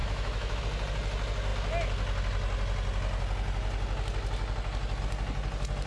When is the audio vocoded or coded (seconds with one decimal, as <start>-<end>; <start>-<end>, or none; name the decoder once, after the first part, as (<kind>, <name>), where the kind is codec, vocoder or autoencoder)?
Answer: 0.0-0.6 (autoencoder, DAC-VAE)